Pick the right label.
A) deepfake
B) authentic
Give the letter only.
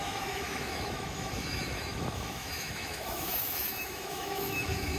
A